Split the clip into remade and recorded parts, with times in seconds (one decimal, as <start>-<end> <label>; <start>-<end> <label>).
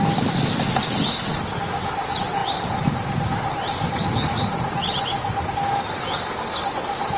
0.0-7.2 recorded